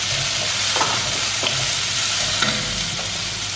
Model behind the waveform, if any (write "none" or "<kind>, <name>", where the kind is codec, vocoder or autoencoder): none